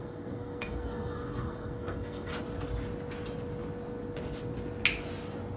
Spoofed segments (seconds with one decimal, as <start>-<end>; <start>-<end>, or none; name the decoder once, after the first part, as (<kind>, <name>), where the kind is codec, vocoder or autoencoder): 0.0-2.3 (codec, SNAC)